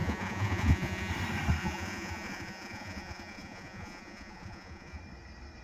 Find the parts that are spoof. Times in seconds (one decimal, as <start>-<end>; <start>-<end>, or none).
0.0-1.1; 1.6-5.0